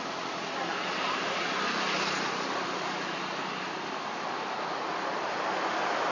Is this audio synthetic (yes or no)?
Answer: no